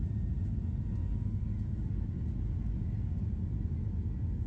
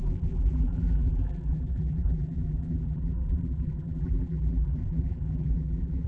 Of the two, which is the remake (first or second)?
second